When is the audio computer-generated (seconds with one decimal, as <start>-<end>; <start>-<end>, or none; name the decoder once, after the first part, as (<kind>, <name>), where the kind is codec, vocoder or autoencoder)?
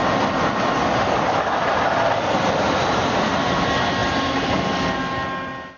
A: none